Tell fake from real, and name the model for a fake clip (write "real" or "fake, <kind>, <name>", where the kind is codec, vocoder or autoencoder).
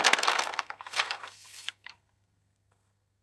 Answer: fake, codec, SNAC